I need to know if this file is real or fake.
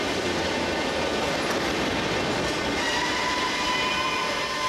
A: fake